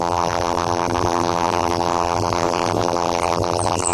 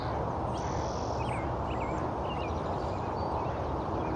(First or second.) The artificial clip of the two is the first